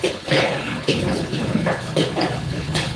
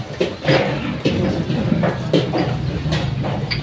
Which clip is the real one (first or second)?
second